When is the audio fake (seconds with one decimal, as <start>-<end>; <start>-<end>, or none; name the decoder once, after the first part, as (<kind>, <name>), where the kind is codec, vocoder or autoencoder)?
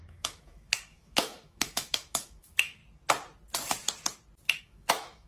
0.0-2.8 (autoencoder, DAC-VAE); 4.6-5.3